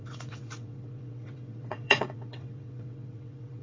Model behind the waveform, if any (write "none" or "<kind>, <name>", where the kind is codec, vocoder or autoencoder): vocoder, WaveNeXt